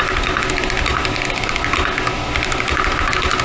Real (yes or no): yes